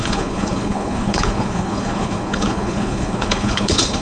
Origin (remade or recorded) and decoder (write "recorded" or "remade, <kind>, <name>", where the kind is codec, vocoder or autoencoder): remade, codec, HILCodec